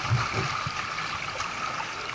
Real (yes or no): no